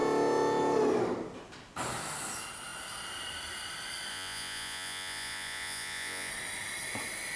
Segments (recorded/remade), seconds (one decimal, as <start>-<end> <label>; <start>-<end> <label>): 0.0-4.1 recorded; 4.1-6.3 remade; 6.3-7.4 recorded